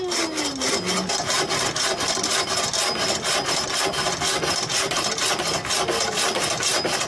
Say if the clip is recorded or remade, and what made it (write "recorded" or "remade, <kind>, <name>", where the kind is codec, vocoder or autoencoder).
recorded